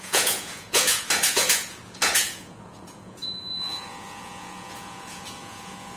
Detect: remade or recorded remade